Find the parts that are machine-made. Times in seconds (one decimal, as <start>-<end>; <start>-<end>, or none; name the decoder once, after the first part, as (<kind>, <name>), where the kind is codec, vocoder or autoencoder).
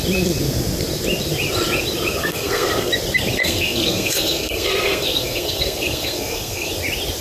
2.2-2.9 (codec, SNAC); 3.4-6.7